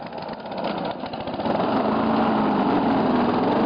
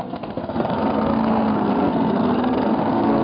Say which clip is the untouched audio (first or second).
first